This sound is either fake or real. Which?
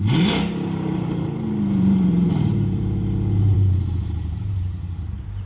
fake